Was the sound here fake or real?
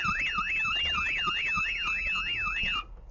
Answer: real